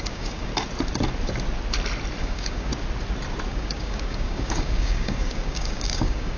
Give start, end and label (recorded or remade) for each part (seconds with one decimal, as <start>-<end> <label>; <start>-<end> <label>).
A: 0.0-0.5 remade; 0.5-2.2 recorded; 2.2-2.7 remade; 2.7-3.5 recorded; 3.5-6.4 remade